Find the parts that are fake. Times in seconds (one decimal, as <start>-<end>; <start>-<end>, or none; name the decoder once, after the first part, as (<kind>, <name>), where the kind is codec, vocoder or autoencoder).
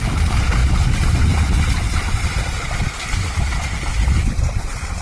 0.6-2.4 (vocoder, BigVGAN v2); 3.9-4.4